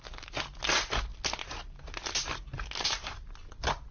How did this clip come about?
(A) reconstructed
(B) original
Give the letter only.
B